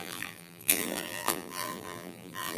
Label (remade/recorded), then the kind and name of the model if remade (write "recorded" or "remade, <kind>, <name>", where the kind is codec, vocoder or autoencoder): remade, vocoder, BigVGAN v2